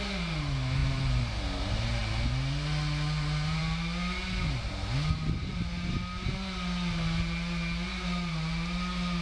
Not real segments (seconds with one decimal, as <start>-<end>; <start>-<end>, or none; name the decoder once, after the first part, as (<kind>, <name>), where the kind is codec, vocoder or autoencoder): 0.8-1.3 (vocoder, BigVGAN v2)